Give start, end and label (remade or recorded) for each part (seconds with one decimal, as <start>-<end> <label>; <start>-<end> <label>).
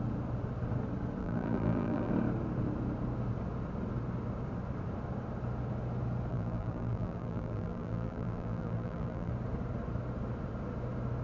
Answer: 0.0-1.2 recorded; 1.2-2.1 remade; 2.1-6.3 recorded; 6.3-9.3 remade; 9.3-11.2 recorded